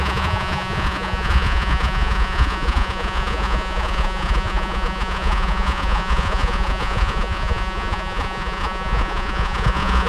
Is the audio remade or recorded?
remade